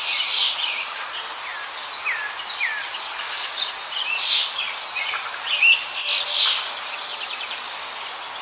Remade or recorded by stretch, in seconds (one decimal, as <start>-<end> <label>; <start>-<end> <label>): 0.0-8.4 recorded